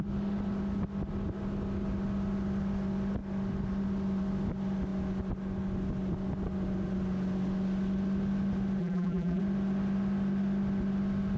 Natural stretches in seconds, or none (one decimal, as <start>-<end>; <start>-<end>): 0.0-8.8; 9.4-11.4